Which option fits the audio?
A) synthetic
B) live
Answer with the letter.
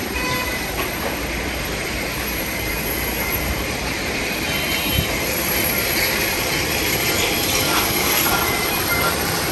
A